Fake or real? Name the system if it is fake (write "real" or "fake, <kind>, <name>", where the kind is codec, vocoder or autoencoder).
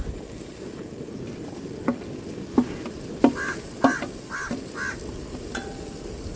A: real